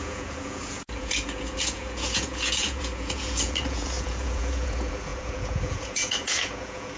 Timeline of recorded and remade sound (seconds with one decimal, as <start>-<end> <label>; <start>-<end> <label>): 0.0-7.0 remade